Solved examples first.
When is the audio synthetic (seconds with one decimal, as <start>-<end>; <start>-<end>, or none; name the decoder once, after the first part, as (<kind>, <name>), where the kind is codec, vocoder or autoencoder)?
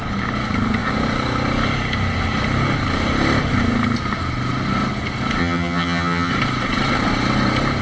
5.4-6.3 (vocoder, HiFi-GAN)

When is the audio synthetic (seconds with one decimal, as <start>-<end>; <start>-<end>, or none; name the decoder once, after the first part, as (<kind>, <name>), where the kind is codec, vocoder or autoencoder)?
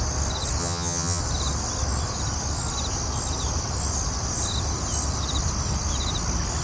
0.6-1.2 (vocoder, HiFi-GAN)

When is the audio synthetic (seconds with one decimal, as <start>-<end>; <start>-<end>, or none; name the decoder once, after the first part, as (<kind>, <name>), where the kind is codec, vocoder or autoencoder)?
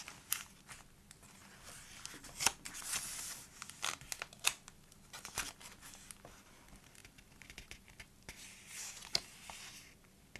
none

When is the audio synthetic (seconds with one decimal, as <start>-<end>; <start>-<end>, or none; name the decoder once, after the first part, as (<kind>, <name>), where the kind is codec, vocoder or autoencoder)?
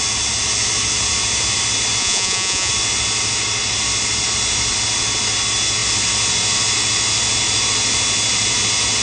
2.0-2.7 (vocoder, Vocos)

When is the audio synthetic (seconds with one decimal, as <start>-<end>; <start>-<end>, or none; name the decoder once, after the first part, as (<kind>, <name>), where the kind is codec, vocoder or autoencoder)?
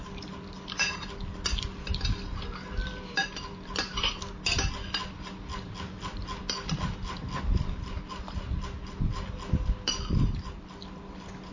none